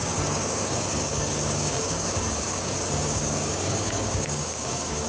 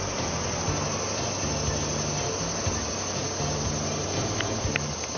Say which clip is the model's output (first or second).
first